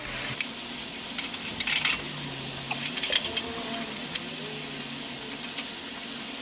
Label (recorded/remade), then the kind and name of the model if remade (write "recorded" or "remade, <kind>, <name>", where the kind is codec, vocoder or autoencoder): recorded